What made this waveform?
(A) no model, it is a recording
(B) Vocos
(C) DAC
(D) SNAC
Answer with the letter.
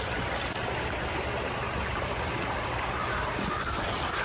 A